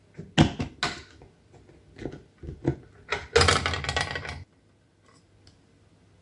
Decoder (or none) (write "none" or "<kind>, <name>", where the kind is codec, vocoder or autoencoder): none